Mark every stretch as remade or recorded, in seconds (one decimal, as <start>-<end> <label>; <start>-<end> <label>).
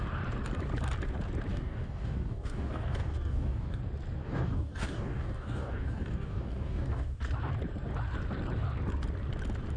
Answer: 0.0-1.5 recorded; 1.5-3.8 remade; 3.8-4.2 recorded; 4.2-7.2 remade; 7.2-9.8 recorded